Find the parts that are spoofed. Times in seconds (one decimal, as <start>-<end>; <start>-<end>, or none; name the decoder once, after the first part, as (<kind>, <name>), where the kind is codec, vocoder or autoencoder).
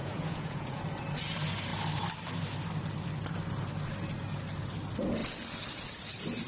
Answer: 0.0-0.8 (vocoder, Vocos)